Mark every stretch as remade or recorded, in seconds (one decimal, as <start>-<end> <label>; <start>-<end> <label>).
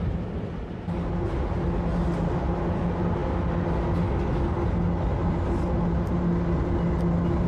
0.0-7.5 recorded